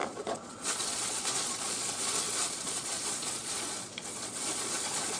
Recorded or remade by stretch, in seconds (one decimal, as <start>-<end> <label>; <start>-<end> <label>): 0.0-5.2 remade